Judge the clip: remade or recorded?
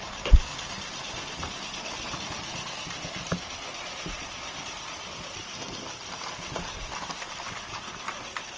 remade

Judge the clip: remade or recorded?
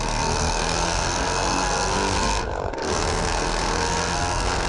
remade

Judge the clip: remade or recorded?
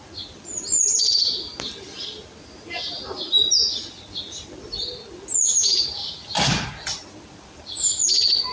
recorded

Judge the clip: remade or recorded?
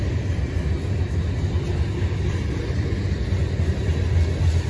recorded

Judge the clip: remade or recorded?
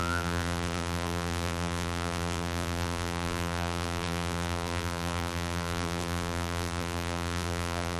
remade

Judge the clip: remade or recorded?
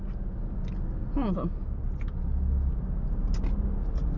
recorded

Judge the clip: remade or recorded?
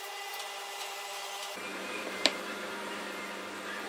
remade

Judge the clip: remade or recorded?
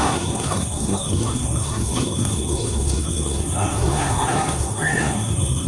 remade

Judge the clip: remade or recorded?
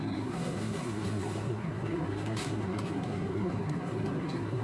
remade